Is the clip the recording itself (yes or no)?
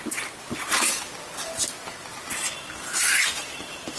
yes